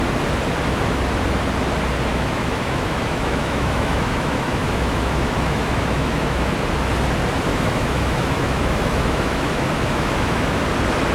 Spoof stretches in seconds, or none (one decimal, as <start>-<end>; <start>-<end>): 2.1-6.5; 7.5-10.6